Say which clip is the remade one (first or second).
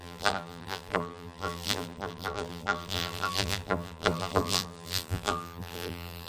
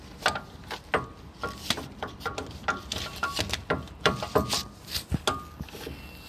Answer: first